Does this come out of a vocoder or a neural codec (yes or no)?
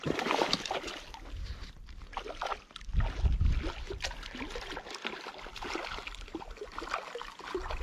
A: no